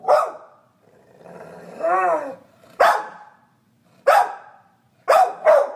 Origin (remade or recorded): remade